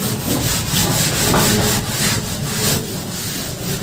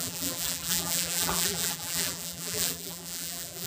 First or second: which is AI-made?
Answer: second